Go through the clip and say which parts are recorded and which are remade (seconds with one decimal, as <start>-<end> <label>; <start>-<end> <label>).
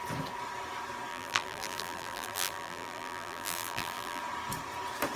0.0-1.1 recorded; 1.1-4.2 remade; 4.2-5.2 recorded